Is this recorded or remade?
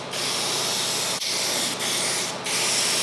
recorded